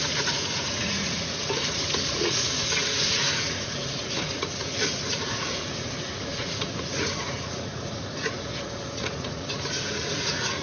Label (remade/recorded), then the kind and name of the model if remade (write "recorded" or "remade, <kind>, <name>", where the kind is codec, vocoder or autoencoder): remade, vocoder, Vocos